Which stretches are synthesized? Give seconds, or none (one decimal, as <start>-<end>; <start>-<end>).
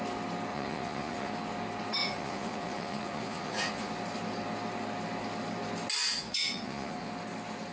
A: 0.5-1.3; 2.0-3.9; 6.0-7.1